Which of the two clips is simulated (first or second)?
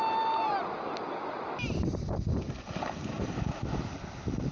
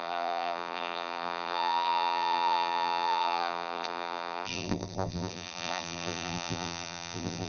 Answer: second